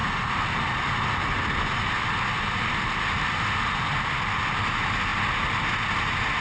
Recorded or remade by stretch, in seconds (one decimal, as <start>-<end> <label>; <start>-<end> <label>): 0.0-6.4 recorded